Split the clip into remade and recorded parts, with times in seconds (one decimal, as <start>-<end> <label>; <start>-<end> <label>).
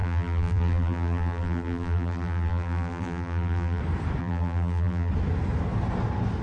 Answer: 0.0-3.8 remade; 3.8-4.2 recorded; 4.2-5.1 remade; 5.1-6.4 recorded